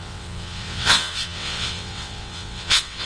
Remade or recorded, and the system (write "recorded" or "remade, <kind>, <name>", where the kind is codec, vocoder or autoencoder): remade, vocoder, WaveNeXt